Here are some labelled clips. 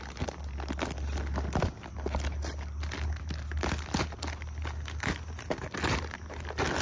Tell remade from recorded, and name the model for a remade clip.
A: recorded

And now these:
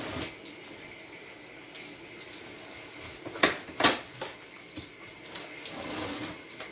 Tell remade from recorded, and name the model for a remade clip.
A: recorded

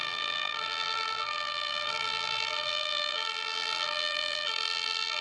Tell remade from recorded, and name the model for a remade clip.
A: remade, vocoder, BigVGAN v2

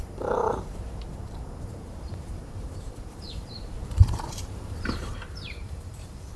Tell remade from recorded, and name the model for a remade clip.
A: remade, vocoder, BigVGAN v2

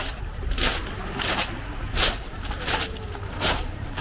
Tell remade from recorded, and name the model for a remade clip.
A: remade, vocoder, BigVGAN v2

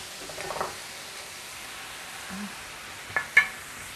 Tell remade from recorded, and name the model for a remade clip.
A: recorded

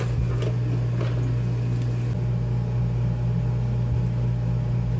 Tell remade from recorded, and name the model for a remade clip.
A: recorded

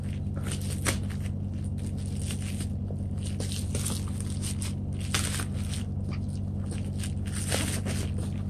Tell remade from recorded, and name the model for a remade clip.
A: recorded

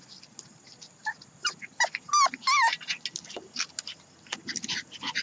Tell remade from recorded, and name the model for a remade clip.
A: recorded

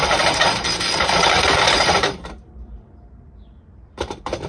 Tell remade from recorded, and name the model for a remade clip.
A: remade, vocoder, BigVGAN v2